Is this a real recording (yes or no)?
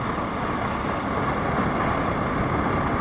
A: yes